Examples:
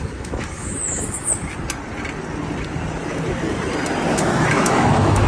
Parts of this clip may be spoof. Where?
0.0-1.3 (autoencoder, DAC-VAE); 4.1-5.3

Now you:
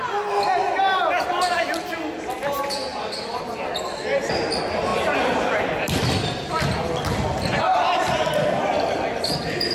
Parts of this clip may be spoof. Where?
2.9-3.4 (vocoder, BigVGAN v2); 4.9-9.7

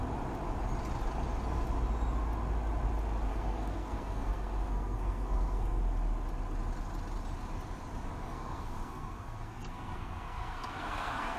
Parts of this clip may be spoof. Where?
3.3-5.8 (codec, SNAC); 8.2-11.4

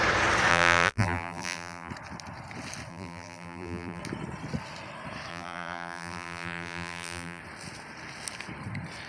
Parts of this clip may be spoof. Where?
0.5-1.9 (vocoder, BigVGAN v2); 2.9-4.0; 5.3-7.4

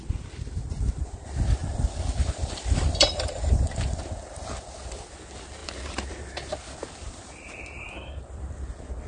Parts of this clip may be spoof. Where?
1.6-4.0 (vocoder, BigVGAN v2)

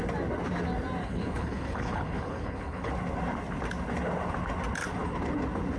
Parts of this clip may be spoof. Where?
1.0-2.9 (codec, HILCodec)

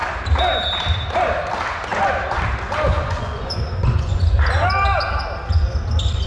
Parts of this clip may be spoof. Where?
2.9-4.2 (vocoder, Vocos)